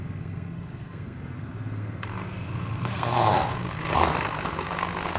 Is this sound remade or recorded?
remade